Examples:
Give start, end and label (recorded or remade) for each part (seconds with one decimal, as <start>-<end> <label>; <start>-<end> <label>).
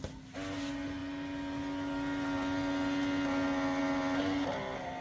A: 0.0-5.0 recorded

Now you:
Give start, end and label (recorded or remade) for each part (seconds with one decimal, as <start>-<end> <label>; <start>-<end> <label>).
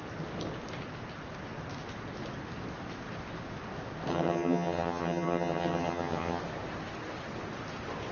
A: 0.0-4.1 recorded; 4.1-6.4 remade; 6.4-8.1 recorded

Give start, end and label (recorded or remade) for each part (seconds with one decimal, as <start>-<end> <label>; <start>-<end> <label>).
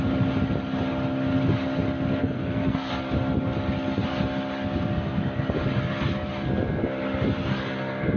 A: 0.0-2.2 recorded; 2.2-2.9 remade; 2.9-8.2 recorded